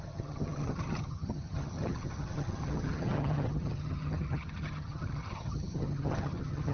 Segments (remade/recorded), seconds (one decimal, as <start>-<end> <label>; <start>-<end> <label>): 0.0-6.7 remade